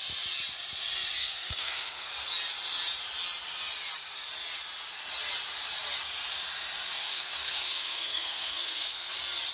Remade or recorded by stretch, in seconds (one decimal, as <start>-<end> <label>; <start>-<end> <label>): 0.0-1.2 recorded; 1.2-2.1 remade; 2.1-7.0 recorded; 7.0-9.1 remade; 9.1-9.5 recorded